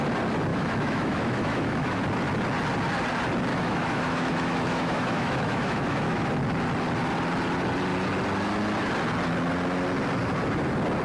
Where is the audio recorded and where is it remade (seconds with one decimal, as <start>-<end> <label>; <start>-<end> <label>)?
0.0-0.5 recorded; 0.5-2.0 remade; 2.0-3.5 recorded; 3.5-6.3 remade; 6.3-11.0 recorded